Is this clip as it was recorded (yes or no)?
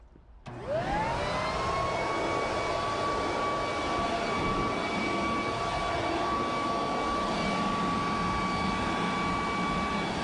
yes